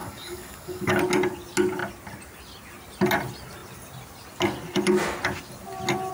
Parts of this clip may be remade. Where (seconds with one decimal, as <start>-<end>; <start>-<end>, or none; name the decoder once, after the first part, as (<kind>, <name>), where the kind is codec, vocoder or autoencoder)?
0.0-1.0 (codec, DAC)